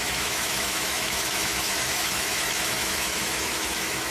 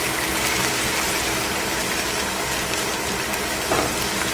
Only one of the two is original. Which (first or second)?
second